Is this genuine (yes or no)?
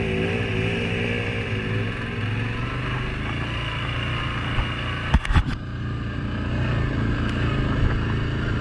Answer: yes